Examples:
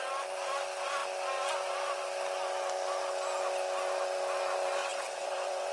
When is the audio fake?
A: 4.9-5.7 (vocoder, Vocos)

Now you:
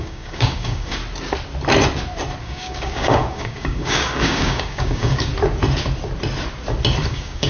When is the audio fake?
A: 0.0-1.0 (codec, DAC); 2.4-5.3; 7.1-7.5

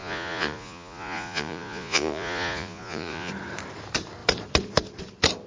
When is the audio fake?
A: 0.0-3.3 (vocoder, Vocos)

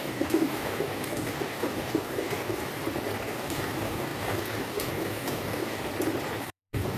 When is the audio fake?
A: 0.0-2.6 (codec, DAC); 3.2-5.9; 6.4-7.0

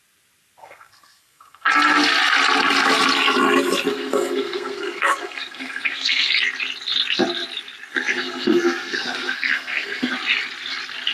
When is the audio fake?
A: 0.6-1.7 (codec, SNAC); 3.9-6.3; 7.9-10.1